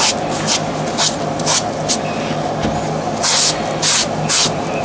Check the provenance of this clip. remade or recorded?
recorded